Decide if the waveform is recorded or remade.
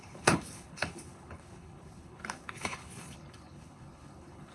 remade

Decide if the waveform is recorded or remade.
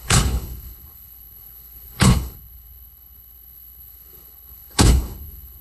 remade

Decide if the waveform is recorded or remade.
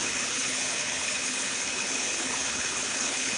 remade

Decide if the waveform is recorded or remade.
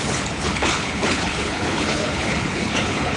remade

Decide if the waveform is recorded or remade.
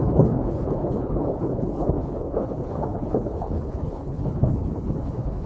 remade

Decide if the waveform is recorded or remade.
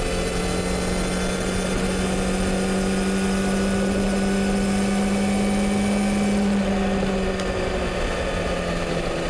recorded